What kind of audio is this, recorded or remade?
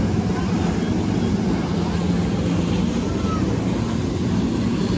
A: recorded